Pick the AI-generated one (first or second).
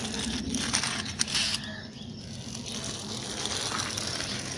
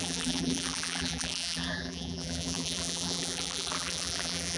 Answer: second